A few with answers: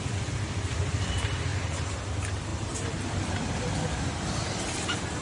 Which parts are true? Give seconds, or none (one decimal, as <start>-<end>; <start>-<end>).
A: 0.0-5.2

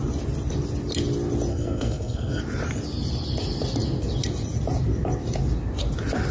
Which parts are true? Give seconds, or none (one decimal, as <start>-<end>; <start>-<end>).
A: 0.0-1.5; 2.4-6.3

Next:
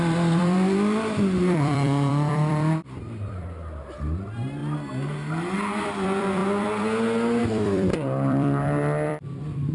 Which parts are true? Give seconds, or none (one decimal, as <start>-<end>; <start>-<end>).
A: 4.6-5.8

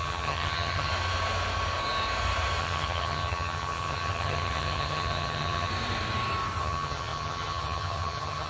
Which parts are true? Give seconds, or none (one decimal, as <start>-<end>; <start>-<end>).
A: 0.9-2.6; 5.7-6.6

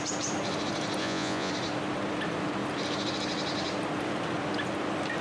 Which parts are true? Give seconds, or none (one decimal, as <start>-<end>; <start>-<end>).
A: 0.0-1.0; 1.5-5.2

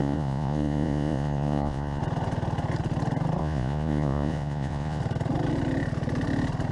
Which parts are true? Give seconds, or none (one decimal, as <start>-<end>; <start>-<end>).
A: 2.0-3.4; 5.0-6.7

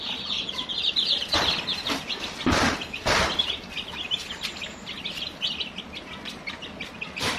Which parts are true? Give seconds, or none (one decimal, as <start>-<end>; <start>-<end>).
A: 0.0-7.4